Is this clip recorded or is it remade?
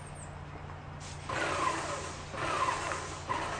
recorded